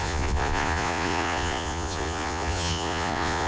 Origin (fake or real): fake